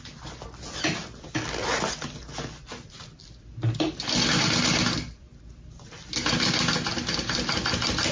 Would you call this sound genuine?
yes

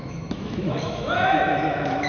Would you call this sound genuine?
no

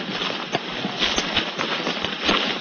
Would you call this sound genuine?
yes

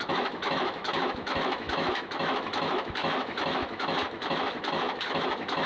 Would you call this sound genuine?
no